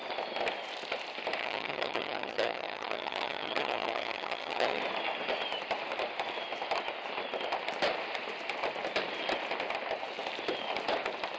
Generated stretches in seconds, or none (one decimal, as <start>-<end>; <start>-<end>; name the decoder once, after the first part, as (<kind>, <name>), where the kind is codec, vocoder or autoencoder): 1.4-4.8 (vocoder, HiFi-GAN)